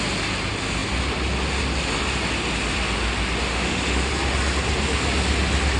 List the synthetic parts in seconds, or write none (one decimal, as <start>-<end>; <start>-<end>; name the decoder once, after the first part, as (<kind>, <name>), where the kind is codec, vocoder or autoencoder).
3.5-4.1 (autoencoder, DAC-VAE)

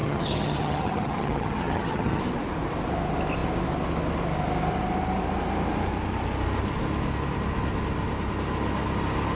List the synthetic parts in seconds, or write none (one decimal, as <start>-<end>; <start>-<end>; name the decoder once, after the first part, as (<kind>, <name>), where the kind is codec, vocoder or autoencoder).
0.0-2.2 (vocoder, HiFi-GAN)

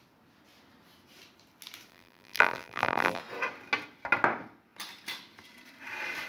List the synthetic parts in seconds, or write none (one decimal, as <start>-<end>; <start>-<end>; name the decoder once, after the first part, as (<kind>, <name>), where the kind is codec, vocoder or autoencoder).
1.9-3.2 (vocoder, BigVGAN v2)

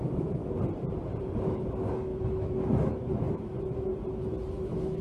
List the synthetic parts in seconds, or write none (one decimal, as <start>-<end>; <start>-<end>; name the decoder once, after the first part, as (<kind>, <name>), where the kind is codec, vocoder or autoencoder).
0.0-0.4 (autoencoder, DAC-VAE); 1.4-3.9; 4.5-5.0

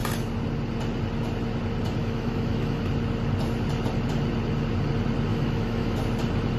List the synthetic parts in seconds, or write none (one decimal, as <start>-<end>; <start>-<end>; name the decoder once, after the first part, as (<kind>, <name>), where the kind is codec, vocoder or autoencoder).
2.0-2.8 (autoencoder, DAC-VAE); 5.3-6.0

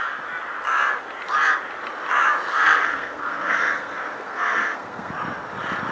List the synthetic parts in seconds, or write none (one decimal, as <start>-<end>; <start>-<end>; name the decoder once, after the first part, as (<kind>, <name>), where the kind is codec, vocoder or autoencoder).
2.5-5.1 (codec, SNAC)

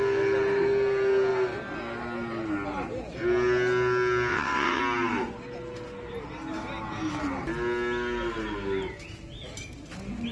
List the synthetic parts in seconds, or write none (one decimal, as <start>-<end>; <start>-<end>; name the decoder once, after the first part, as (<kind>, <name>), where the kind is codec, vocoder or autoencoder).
4.3-4.8 (vocoder, WaveNeXt)

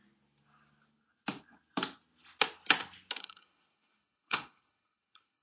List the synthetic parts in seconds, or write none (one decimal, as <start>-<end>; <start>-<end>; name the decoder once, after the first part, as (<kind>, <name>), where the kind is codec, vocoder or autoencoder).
3.2-5.4 (codec, HILCodec)